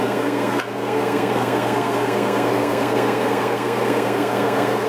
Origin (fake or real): fake